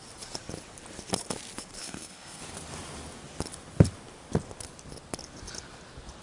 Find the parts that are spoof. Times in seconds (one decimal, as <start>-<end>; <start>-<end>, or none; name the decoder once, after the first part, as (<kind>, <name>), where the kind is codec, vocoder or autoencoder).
1.8-2.4 (codec, SNAC)